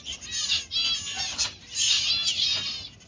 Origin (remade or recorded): recorded